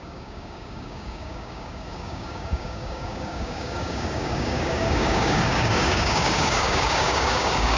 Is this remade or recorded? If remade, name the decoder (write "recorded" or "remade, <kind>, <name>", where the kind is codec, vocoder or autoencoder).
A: remade, codec, DAC